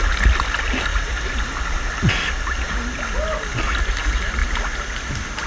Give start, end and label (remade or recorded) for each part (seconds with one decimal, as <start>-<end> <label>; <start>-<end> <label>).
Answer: 0.0-5.5 recorded